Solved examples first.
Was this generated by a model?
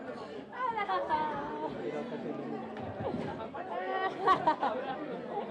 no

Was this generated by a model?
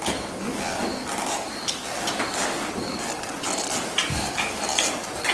no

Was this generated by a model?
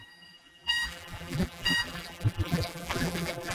yes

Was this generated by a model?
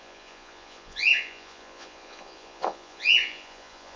yes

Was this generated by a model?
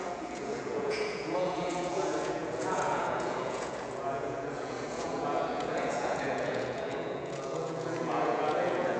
yes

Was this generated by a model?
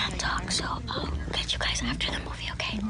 no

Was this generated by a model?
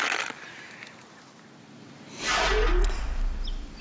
no